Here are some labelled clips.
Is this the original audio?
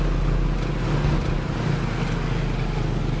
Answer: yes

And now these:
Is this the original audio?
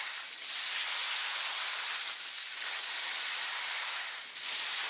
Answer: yes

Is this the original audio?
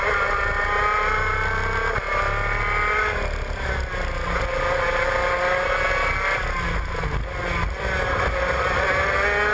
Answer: yes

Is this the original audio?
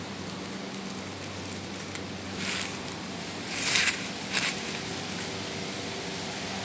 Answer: yes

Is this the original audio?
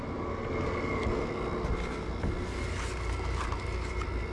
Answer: yes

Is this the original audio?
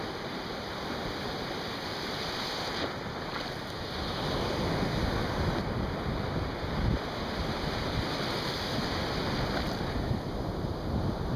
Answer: yes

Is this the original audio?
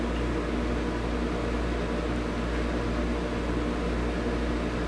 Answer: yes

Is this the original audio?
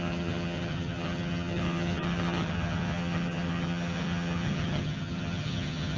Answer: no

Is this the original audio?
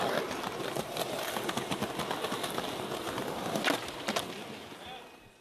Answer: yes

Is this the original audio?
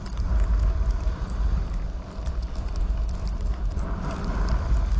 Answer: yes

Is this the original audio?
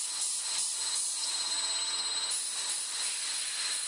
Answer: yes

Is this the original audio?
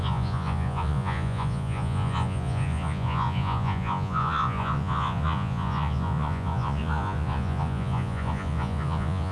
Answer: no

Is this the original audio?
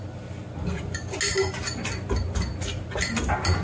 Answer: yes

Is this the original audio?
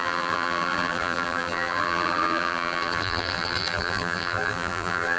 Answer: no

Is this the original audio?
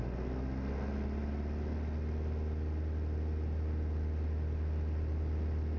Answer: yes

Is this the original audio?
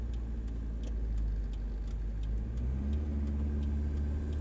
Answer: yes